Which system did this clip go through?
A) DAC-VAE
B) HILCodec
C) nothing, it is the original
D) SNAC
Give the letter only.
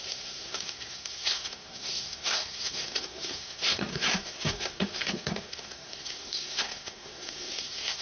D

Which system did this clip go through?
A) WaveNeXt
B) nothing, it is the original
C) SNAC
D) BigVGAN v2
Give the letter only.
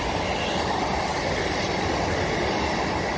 B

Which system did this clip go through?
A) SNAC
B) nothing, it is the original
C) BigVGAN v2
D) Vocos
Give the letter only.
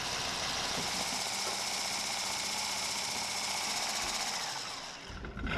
B